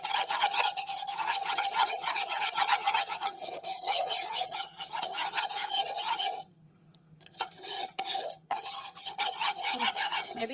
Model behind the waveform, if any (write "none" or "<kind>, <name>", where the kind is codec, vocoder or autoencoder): vocoder, HiFi-GAN